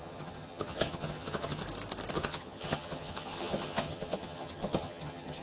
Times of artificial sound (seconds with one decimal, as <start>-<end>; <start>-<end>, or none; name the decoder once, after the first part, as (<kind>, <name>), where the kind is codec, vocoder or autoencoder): 0.0-1.6 (vocoder, HiFi-GAN); 2.1-5.4